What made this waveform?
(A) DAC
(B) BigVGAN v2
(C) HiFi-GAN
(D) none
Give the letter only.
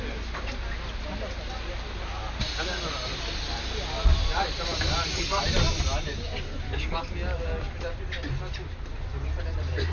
D